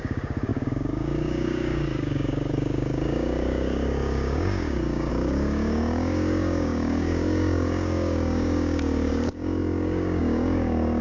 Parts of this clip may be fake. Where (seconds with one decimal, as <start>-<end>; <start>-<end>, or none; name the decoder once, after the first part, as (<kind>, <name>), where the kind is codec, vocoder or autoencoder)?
0.0-11.0 (codec, DAC)